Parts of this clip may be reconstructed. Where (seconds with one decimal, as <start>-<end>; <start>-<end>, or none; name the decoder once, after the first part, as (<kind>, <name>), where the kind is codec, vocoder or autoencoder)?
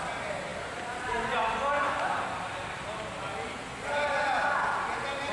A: none